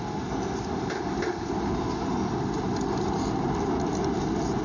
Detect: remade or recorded recorded